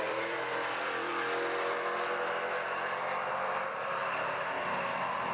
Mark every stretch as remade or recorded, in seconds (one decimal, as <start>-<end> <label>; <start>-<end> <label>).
0.0-1.1 remade; 1.1-3.3 recorded; 3.3-4.0 remade; 4.0-4.6 recorded; 4.6-5.3 remade